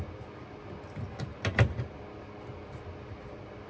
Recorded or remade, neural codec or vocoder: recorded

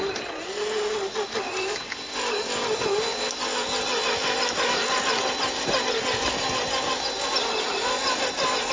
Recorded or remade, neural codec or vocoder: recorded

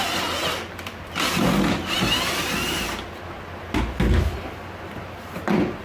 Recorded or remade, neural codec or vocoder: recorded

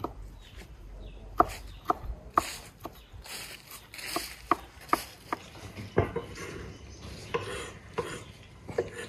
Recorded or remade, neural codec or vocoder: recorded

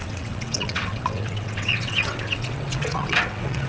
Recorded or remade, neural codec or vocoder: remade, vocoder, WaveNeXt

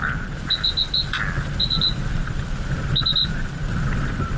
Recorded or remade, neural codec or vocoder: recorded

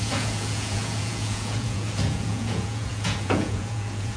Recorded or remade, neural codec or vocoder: remade, vocoder, Vocos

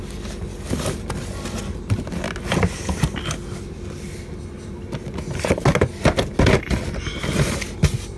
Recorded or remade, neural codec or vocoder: recorded